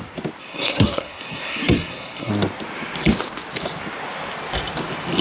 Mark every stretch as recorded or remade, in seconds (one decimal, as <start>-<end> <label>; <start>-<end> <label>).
0.0-0.4 recorded; 0.4-2.3 remade; 2.3-5.2 recorded